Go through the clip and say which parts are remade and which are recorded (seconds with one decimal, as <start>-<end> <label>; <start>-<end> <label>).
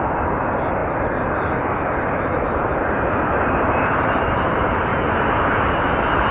0.0-6.3 recorded